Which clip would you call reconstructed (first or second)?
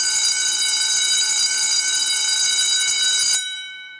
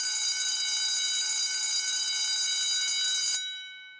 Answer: first